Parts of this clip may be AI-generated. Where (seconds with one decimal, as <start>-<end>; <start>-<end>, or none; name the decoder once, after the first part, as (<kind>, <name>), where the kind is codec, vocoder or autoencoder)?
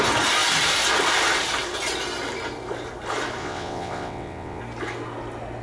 3.4-4.6 (vocoder, WaveNeXt)